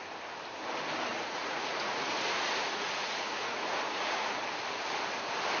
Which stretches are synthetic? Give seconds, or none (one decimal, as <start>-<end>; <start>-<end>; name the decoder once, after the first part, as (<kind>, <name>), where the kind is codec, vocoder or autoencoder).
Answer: 1.1-4.4 (vocoder, Vocos)